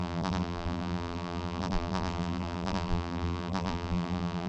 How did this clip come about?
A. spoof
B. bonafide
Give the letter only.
A